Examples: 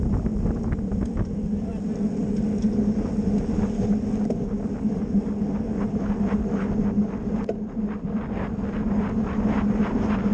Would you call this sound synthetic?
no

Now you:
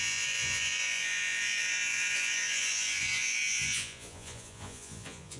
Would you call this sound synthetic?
yes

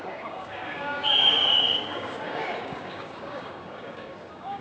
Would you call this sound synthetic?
yes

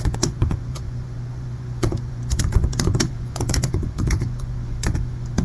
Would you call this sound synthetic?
yes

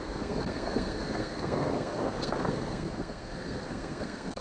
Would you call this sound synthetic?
yes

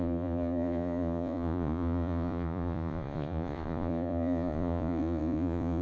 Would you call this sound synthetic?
yes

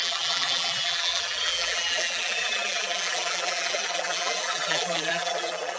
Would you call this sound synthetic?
yes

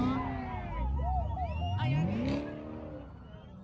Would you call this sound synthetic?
no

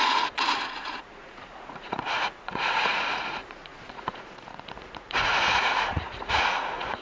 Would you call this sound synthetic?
yes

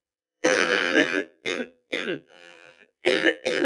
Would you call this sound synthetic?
yes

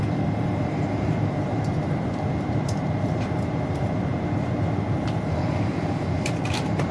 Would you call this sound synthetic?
yes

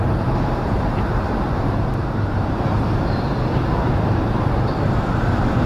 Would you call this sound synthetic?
yes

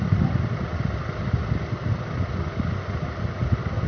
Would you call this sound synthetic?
no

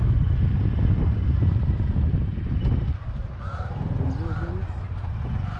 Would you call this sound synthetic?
no